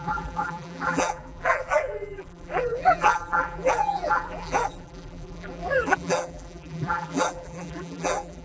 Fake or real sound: fake